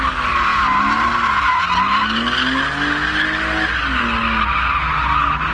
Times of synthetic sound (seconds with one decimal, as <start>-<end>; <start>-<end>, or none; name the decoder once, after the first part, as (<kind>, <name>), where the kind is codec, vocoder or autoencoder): none